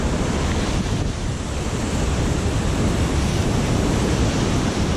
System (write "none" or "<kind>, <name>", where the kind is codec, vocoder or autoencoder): vocoder, BigVGAN v2